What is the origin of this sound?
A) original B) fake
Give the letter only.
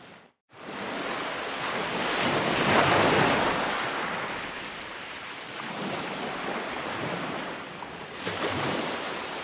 A